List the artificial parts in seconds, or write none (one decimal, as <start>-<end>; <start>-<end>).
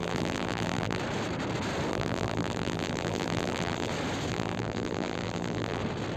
0.0-1.0; 1.9-3.9; 4.3-5.8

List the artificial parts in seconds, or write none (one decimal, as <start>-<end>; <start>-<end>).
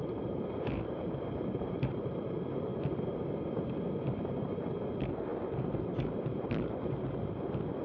0.0-2.3; 5.3-7.1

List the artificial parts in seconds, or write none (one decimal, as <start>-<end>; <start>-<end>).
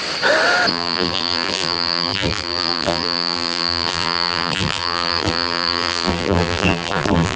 0.7-7.4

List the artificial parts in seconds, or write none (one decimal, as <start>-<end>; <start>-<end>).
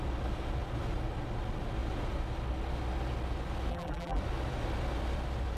3.7-4.2